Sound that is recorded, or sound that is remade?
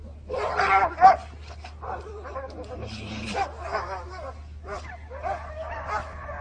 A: recorded